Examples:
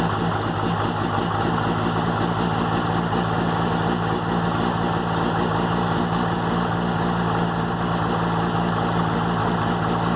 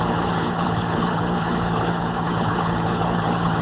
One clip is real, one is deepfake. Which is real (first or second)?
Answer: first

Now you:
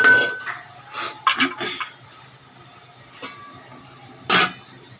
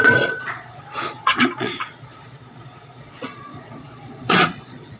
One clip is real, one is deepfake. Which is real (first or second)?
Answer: first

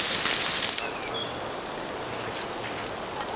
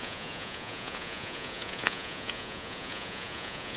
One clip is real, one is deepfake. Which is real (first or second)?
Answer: first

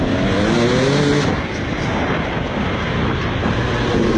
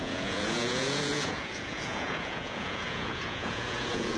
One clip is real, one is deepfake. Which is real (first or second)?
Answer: first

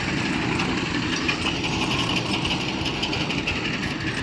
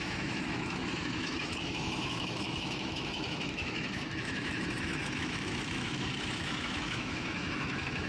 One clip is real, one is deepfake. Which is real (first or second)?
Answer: first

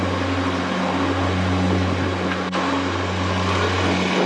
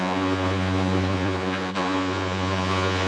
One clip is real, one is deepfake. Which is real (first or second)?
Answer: first